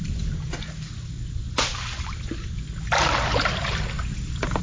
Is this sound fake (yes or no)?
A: no